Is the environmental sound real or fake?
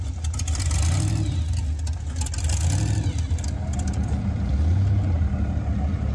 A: real